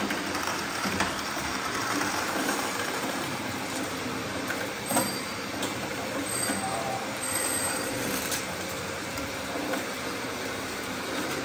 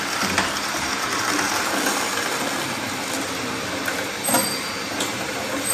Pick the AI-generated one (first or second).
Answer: first